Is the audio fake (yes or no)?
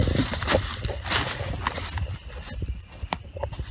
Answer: no